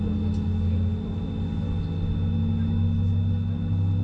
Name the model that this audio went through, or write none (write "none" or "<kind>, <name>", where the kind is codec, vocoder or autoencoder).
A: none